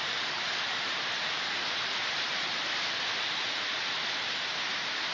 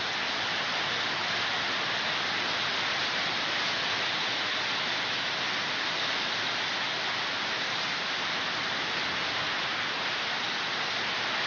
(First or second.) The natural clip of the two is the second